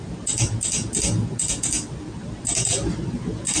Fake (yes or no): no